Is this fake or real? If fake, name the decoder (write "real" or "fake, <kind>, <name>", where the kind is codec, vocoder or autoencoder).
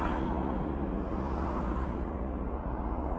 fake, vocoder, Vocos